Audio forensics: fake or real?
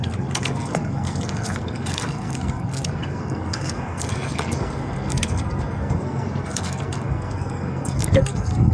fake